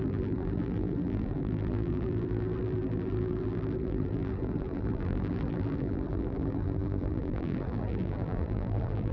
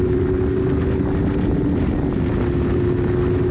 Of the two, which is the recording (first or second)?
second